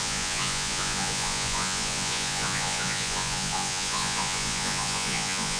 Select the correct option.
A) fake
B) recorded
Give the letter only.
A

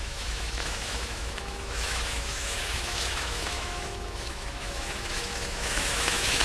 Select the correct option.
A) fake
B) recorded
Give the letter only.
A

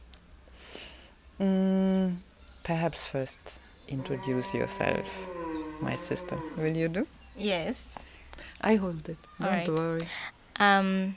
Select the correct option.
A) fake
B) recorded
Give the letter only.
B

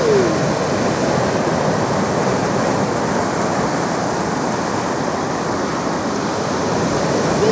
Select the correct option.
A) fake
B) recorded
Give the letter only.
B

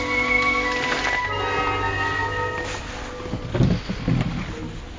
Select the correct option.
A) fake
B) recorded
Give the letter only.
B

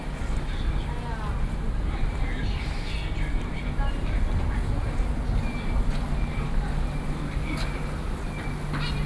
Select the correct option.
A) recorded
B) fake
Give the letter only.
A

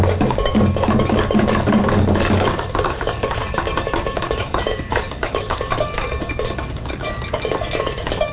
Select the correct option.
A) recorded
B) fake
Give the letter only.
B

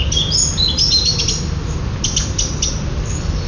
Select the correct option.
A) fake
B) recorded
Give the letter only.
B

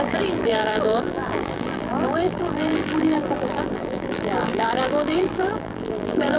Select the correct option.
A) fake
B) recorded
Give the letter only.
A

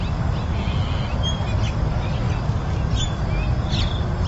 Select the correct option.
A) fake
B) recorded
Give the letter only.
B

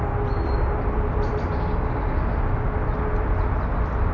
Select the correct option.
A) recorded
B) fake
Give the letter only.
A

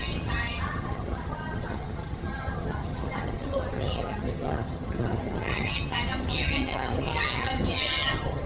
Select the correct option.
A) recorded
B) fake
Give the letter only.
B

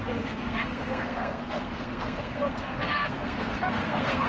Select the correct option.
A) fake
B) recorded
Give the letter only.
A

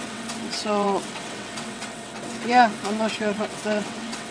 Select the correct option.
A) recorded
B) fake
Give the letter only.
B